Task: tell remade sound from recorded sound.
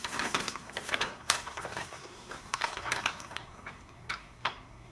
remade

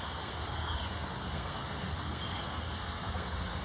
remade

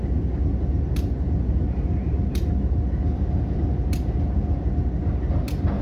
recorded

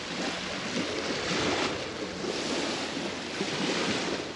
recorded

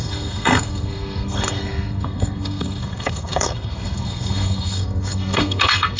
remade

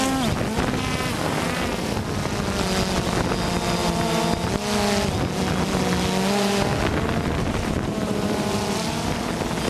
recorded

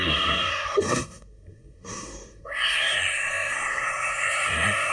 remade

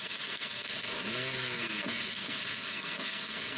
remade